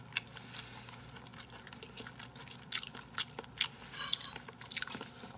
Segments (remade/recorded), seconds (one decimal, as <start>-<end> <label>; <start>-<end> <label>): 0.0-5.4 recorded